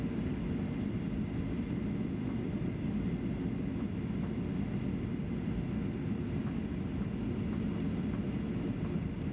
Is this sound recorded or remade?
recorded